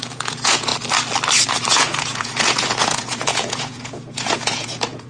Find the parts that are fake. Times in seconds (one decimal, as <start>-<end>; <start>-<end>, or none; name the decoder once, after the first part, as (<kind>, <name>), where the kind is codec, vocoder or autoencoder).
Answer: 0.0-0.7 (vocoder, Vocos); 1.7-5.1